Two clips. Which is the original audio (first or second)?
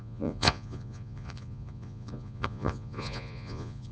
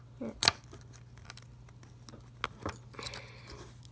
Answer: second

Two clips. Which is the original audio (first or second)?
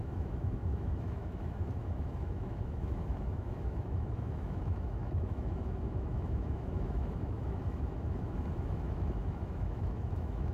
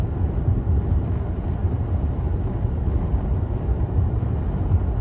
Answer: second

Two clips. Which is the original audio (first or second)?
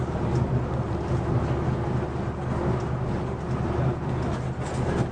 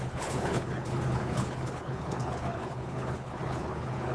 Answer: first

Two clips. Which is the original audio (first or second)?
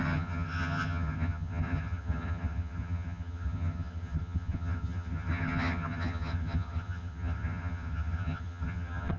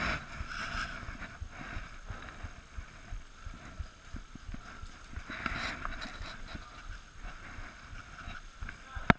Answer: second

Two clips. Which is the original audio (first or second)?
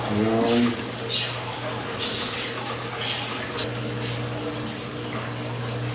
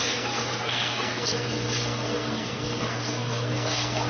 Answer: first